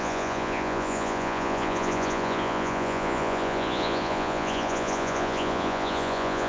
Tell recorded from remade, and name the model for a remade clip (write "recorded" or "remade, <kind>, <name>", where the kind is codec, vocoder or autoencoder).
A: remade, vocoder, Vocos